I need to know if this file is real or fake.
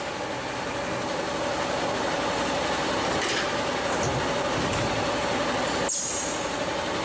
real